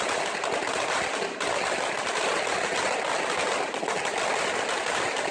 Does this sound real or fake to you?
real